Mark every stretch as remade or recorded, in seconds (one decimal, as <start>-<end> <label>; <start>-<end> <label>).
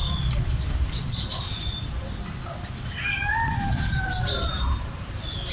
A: 0.0-2.2 remade; 2.2-3.5 recorded; 3.5-4.4 remade; 4.4-5.5 recorded